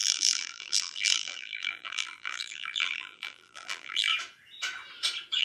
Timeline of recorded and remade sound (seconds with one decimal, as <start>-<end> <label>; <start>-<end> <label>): 0.0-4.1 remade; 4.1-5.4 recorded